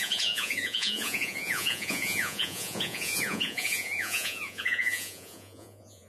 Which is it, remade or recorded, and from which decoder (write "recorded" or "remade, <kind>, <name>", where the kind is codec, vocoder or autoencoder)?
remade, vocoder, Vocos